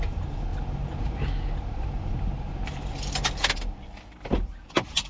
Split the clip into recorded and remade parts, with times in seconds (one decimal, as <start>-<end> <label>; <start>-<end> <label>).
0.0-5.1 recorded